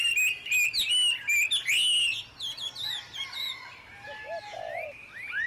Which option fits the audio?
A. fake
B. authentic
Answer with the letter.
B